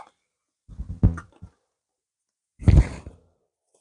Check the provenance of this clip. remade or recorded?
recorded